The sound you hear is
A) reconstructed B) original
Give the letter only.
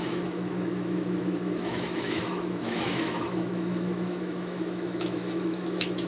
A